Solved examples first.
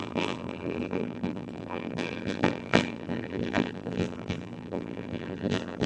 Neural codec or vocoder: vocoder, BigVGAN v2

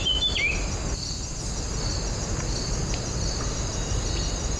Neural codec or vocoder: none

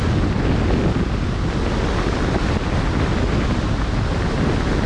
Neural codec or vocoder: none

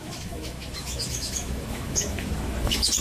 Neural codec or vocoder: autoencoder, DAC-VAE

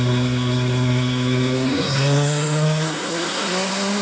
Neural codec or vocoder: codec, SNAC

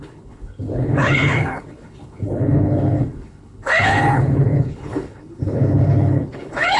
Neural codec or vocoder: codec, HILCodec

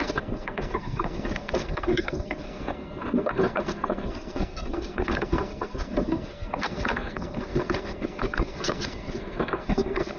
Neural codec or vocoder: codec, SNAC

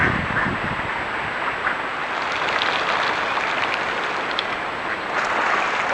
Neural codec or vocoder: none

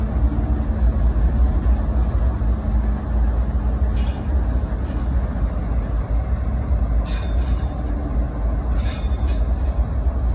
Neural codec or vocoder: none